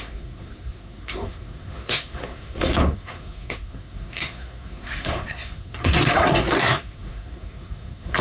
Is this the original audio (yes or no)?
no